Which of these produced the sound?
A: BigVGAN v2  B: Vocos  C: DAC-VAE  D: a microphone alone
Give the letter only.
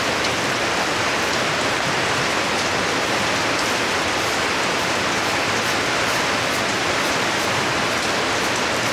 D